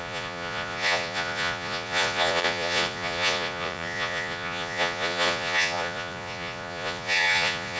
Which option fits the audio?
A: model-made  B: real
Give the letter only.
A